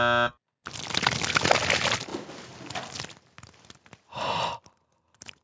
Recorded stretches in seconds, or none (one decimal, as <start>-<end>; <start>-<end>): 0.0-5.4

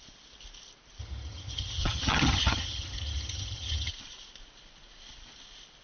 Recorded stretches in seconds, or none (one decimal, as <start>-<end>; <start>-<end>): 0.0-1.0; 3.9-5.8

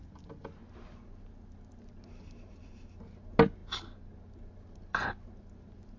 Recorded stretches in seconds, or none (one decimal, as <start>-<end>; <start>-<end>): 0.0-6.0

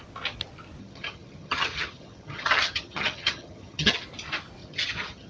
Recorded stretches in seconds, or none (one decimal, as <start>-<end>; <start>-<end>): 0.0-0.8; 4.0-4.6